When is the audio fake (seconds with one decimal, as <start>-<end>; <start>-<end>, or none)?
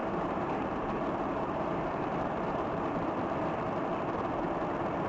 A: 0.0-3.1